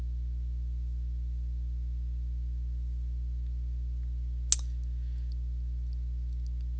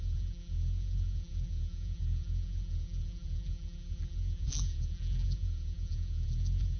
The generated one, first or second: second